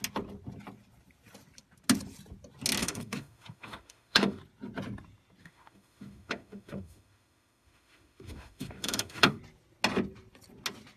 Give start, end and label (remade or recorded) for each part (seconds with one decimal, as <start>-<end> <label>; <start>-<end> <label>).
0.0-2.8 recorded; 2.8-4.4 remade; 4.4-5.4 recorded; 5.4-9.4 remade; 9.4-11.0 recorded